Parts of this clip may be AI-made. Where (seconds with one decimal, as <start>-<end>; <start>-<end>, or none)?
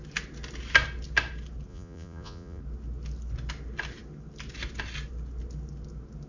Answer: 1.7-2.6